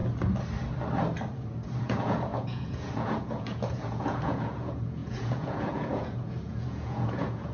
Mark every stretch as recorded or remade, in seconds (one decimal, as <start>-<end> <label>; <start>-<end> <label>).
0.0-1.8 recorded; 1.8-7.5 remade